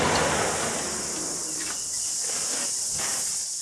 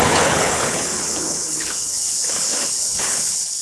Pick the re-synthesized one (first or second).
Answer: second